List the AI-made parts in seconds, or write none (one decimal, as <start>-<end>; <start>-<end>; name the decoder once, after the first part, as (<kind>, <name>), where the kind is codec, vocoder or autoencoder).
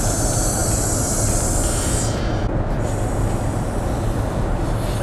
none